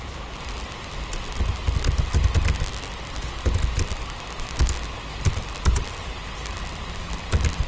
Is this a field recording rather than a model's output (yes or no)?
yes